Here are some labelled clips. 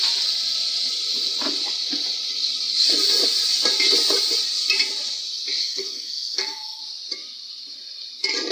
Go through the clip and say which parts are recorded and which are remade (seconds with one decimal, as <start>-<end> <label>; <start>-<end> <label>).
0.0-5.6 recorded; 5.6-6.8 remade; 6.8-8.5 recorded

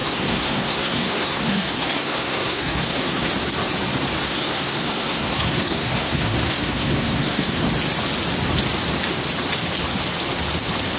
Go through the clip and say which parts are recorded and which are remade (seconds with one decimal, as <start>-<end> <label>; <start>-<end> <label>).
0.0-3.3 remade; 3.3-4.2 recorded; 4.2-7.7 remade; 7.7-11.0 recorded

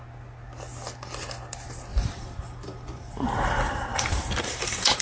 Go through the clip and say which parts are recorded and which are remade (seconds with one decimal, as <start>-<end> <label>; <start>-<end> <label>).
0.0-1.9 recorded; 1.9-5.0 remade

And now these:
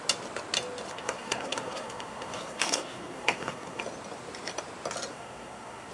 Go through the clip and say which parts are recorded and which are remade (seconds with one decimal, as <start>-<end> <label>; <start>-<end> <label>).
0.0-0.9 recorded; 0.9-3.8 remade; 3.8-5.1 recorded; 5.1-5.9 remade

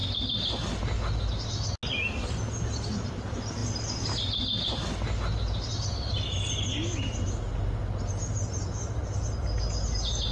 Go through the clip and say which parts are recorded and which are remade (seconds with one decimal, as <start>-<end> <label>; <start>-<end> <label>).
0.0-1.3 remade; 1.3-10.3 recorded

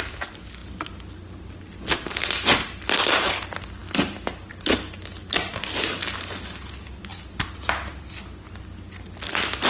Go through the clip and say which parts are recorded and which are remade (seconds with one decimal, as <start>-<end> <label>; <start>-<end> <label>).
0.0-9.7 recorded

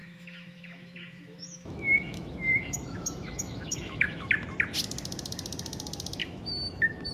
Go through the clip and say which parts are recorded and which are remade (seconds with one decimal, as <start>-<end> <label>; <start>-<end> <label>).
0.0-4.3 remade; 4.3-6.2 recorded; 6.2-7.1 remade

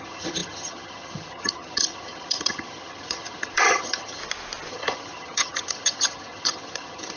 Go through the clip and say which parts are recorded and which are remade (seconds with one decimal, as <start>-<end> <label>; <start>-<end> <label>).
0.0-4.2 remade; 4.2-4.7 recorded; 4.7-7.2 remade